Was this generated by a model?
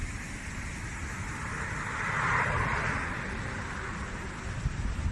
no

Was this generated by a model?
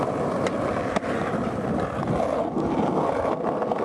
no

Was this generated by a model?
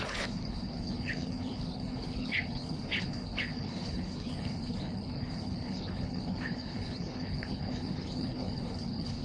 yes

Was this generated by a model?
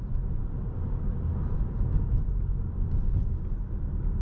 no